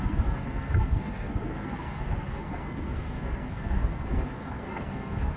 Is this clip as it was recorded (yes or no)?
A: no